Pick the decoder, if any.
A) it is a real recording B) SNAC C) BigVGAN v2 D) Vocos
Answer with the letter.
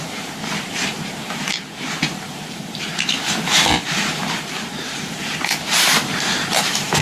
C